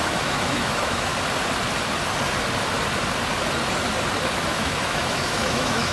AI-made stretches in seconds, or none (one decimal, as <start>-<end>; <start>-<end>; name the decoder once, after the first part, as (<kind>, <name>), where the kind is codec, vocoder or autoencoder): 0.0-1.1 (autoencoder, DAC-VAE); 4.5-5.9